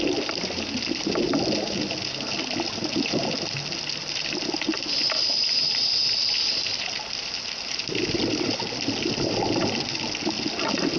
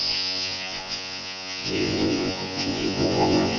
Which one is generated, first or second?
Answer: second